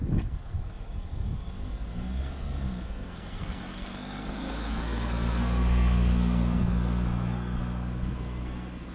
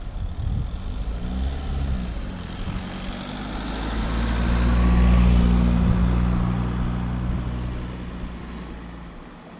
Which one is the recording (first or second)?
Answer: second